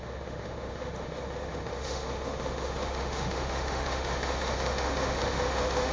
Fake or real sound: fake